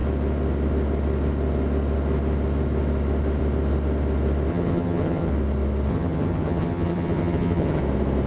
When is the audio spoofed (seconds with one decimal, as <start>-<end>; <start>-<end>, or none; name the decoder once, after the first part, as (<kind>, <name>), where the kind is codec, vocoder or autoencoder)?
4.5-5.3 (vocoder, HiFi-GAN); 5.9-7.8

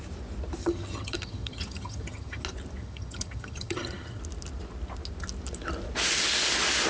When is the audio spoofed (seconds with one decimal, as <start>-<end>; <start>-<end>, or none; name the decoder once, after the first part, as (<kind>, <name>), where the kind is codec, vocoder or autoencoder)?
0.6-2.4 (vocoder, HiFi-GAN); 2.8-4.2

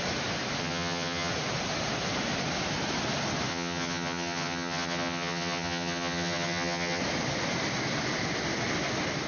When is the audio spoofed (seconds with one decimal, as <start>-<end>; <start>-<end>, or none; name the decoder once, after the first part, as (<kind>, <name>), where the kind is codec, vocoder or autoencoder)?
0.6-1.3 (vocoder, HiFi-GAN); 3.5-7.0

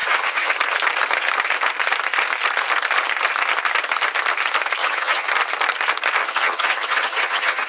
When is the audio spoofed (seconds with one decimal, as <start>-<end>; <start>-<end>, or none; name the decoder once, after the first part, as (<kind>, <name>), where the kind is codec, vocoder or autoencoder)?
0.0-0.5 (vocoder, HiFi-GAN); 4.8-5.3; 6.2-7.7

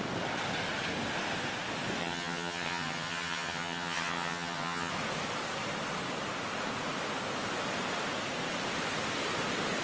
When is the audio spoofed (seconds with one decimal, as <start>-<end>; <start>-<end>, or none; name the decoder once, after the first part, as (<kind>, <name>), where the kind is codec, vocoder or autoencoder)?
2.0-4.9 (vocoder, HiFi-GAN)